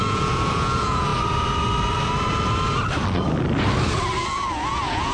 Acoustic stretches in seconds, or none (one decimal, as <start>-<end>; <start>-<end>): 1.1-4.2